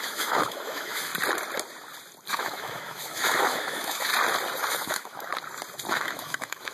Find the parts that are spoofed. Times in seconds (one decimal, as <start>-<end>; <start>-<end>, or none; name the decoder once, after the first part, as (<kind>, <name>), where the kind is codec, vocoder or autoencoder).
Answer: 0.0-1.1 (autoencoder, DAC-VAE); 2.3-4.1; 4.7-5.3; 5.9-6.7